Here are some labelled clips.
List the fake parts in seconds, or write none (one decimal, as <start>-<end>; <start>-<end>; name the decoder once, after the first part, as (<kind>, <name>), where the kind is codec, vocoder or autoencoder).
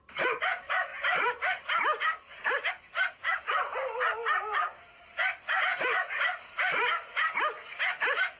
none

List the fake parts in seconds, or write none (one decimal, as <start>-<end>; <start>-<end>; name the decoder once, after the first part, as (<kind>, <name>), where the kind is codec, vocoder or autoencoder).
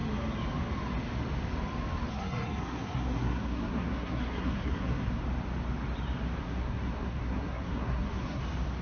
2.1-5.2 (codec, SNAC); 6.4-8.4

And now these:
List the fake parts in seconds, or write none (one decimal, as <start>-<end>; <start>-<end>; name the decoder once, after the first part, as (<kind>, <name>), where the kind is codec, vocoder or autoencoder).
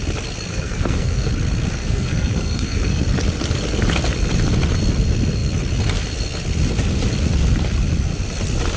0.5-1.3 (codec, SNAC); 1.8-3.0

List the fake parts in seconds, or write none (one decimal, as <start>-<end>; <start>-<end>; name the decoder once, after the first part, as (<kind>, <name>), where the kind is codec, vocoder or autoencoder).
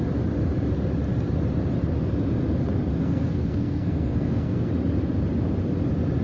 3.0-4.7 (codec, SNAC)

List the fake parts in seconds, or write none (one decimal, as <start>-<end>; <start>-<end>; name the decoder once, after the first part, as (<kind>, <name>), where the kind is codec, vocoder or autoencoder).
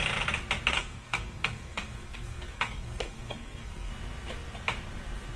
0.7-3.9 (codec, SNAC)